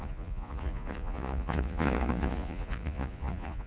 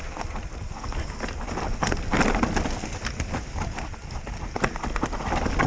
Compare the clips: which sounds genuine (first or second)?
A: second